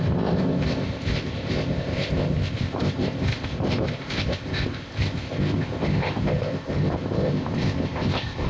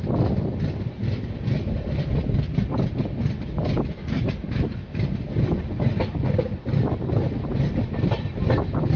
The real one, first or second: second